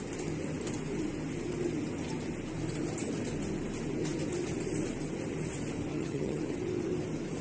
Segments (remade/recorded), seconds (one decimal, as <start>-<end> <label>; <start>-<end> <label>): 0.0-5.9 recorded; 5.9-6.4 remade; 6.4-7.4 recorded